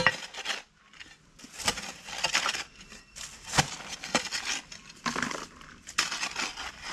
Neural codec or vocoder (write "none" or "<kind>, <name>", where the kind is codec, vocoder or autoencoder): none